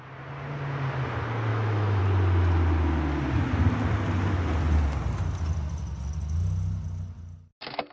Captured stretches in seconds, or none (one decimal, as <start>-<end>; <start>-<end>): 0.0-1.5; 2.0-7.9